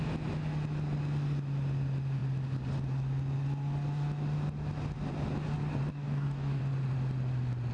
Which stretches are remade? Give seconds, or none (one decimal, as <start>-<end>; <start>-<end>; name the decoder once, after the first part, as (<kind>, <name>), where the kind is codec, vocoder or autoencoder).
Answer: 5.9-6.6 (codec, DAC)